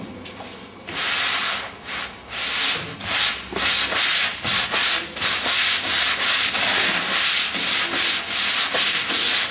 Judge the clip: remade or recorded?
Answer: recorded